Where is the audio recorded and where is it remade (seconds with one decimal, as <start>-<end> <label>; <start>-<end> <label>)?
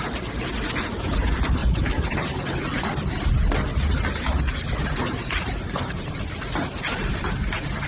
0.0-1.6 recorded; 1.6-2.9 remade; 2.9-5.0 recorded; 5.0-7.2 remade; 7.2-7.9 recorded